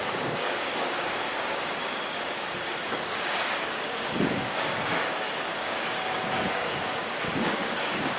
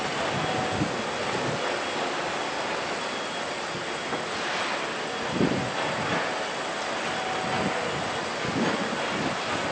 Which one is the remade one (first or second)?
first